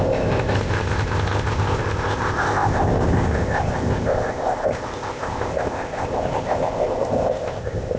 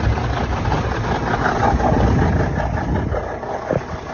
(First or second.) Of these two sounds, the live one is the second